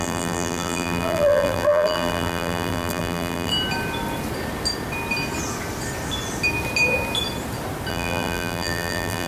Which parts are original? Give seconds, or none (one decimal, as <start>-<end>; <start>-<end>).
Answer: 3.5-7.9